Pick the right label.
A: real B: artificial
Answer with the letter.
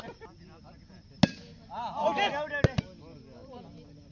A